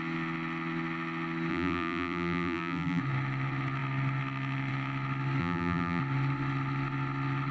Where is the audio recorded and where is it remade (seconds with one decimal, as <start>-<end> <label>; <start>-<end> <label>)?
0.0-1.5 recorded; 1.5-3.0 remade; 3.0-5.4 recorded; 5.4-6.0 remade; 6.0-7.5 recorded